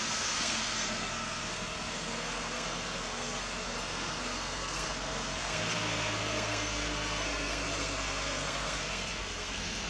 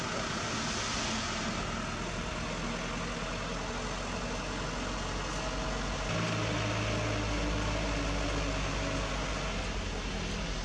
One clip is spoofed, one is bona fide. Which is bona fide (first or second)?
second